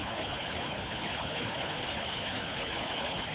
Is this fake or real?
fake